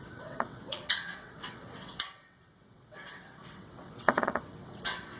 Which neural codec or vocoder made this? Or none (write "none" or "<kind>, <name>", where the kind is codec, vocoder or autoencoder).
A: vocoder, WaveNeXt